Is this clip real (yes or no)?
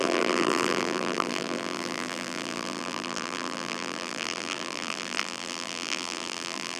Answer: no